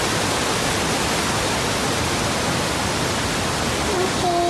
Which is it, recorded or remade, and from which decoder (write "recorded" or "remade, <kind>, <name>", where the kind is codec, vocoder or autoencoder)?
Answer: recorded